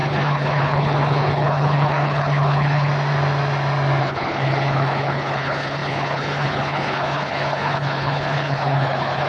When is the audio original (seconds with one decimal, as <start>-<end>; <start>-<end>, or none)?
2.9-4.0

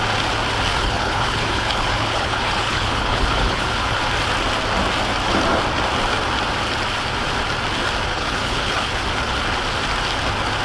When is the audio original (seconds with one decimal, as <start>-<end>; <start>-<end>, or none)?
0.0-0.7; 4.0-8.1; 9.0-10.6

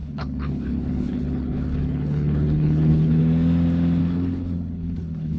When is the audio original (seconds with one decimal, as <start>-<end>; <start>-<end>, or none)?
3.2-4.0

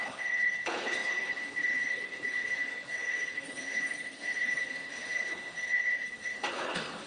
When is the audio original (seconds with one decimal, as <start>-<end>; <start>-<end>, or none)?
none

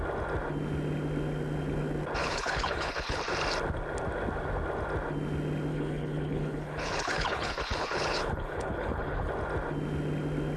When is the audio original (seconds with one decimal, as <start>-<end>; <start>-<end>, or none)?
0.0-2.2; 3.2-5.7; 9.3-10.6